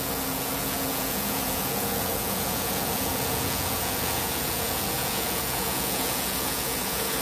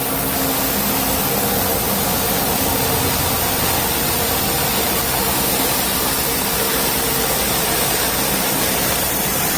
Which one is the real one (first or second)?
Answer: second